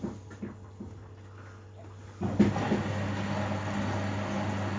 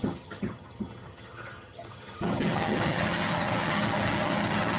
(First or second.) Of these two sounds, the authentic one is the first